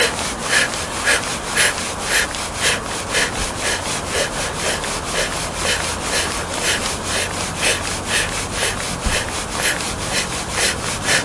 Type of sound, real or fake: real